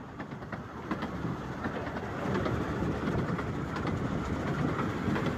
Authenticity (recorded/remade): remade